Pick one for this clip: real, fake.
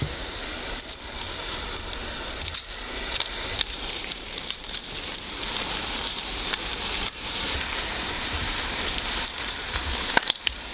fake